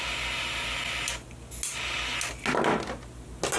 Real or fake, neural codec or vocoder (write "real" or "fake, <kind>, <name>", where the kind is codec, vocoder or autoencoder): real